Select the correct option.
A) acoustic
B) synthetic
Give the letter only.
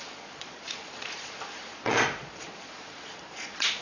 B